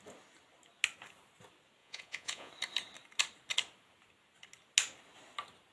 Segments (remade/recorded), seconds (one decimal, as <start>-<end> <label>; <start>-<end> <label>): 0.0-1.8 recorded; 1.8-2.5 remade; 2.5-5.7 recorded